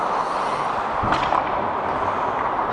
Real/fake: real